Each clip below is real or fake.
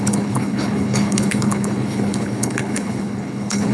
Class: fake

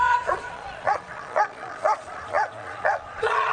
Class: fake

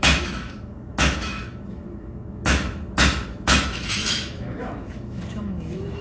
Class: fake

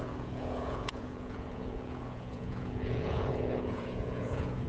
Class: fake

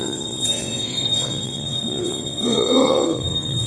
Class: fake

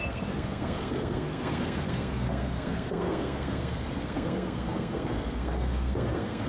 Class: fake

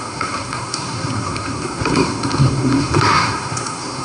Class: fake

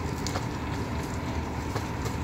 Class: real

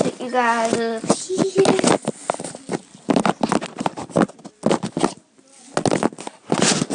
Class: real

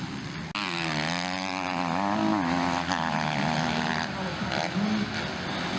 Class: real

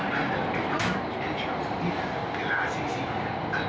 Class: real